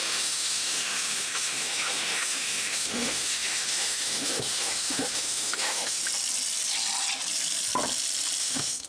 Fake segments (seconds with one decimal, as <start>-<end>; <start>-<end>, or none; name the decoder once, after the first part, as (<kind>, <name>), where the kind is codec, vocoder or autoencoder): 0.0-6.0 (autoencoder, DAC-VAE); 8.4-8.9